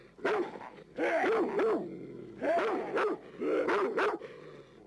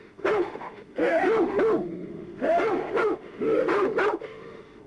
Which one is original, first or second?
first